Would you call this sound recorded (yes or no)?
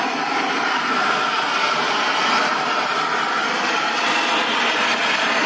yes